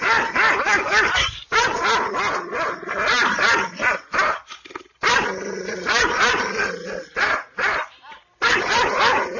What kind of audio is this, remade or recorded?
recorded